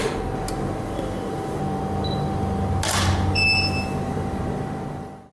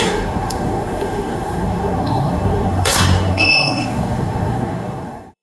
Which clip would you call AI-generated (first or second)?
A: second